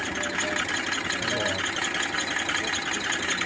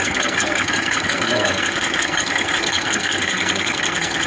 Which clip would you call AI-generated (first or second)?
second